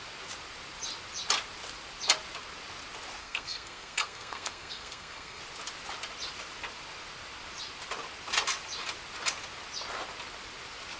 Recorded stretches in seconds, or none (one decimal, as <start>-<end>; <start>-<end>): 0.0-3.2; 5.4-11.0